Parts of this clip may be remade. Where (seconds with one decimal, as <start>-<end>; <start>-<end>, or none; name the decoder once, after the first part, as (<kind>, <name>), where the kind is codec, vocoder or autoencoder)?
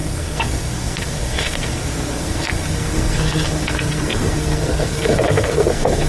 0.0-6.1 (codec, SNAC)